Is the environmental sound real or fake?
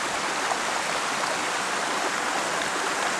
real